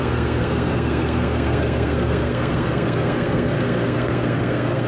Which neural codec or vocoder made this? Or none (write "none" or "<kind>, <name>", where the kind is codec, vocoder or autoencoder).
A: codec, SNAC